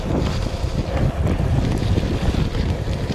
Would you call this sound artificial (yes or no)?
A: yes